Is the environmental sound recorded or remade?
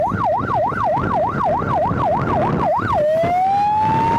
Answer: recorded